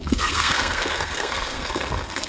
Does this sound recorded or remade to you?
remade